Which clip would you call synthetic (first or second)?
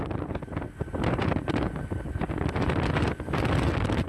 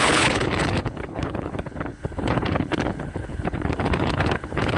second